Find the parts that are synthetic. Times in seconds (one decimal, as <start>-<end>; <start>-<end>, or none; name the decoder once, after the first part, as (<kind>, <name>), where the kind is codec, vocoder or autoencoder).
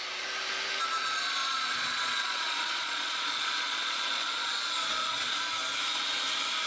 1.4-5.4 (vocoder, Vocos)